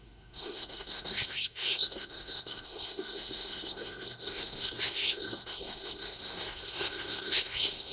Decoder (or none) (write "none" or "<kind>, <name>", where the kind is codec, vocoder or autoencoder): codec, SNAC